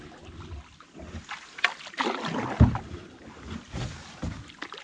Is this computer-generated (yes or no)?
no